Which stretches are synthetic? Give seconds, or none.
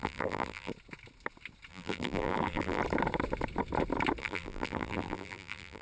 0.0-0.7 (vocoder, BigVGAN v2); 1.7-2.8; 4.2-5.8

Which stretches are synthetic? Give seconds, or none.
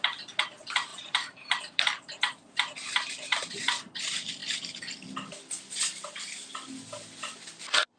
0.9-4.0 (vocoder, BigVGAN v2); 5.9-6.5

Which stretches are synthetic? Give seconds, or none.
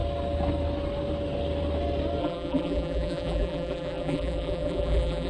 2.2-5.3 (vocoder, BigVGAN v2)